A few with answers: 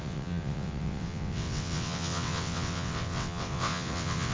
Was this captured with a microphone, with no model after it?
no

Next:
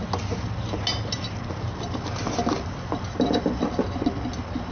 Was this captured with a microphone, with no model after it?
yes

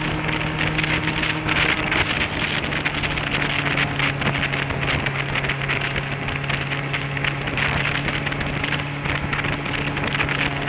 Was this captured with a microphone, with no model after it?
yes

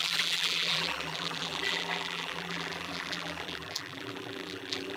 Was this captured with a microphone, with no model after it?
no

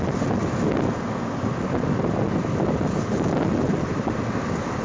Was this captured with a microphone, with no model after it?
yes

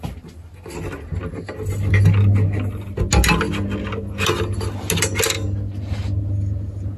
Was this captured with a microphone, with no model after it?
yes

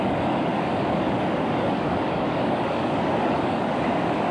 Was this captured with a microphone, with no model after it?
no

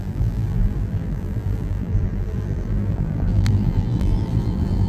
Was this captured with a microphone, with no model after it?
no